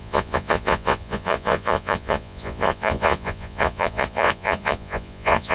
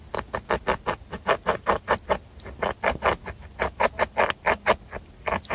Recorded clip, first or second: second